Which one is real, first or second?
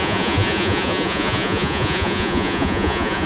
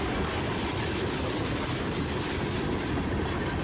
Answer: second